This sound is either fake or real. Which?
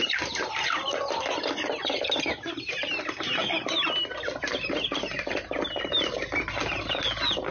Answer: real